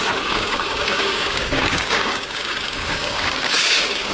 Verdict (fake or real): fake